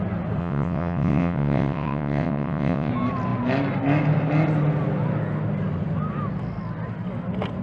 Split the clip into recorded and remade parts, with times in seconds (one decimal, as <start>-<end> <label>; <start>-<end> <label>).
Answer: 0.0-0.4 recorded; 0.4-2.9 remade; 2.9-7.6 recorded

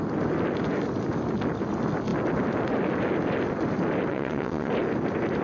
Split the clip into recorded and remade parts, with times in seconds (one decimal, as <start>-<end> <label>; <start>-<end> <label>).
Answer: 0.0-4.1 recorded; 4.1-4.7 remade; 4.7-5.4 recorded